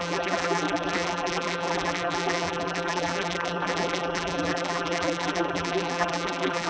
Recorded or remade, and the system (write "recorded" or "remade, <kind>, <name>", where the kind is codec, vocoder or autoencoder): remade, vocoder, BigVGAN v2